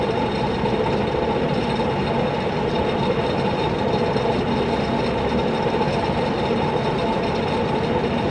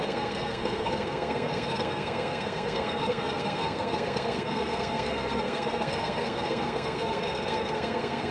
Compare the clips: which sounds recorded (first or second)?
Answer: first